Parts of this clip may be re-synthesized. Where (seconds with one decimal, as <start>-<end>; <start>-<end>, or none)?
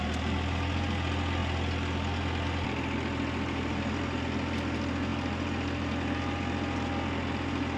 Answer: none